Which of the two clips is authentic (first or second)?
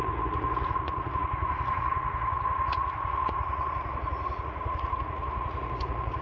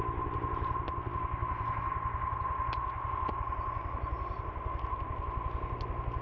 second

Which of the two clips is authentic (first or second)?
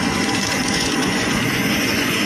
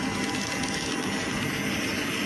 second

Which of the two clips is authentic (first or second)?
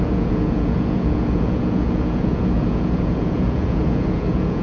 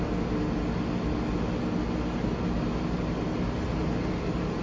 second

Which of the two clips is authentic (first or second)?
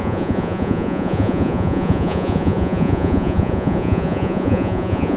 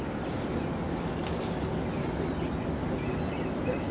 second